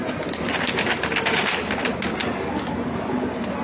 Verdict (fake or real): real